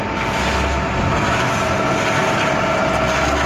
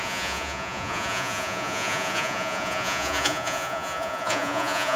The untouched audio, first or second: first